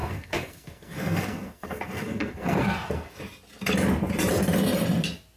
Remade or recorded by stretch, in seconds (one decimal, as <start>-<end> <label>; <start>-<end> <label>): 0.0-3.2 remade; 3.2-5.4 recorded